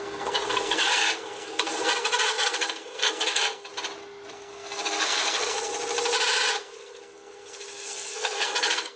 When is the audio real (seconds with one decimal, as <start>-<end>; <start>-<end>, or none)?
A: 3.7-4.3; 5.7-6.5